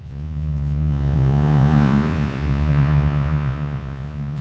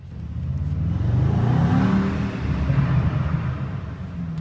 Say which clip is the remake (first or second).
first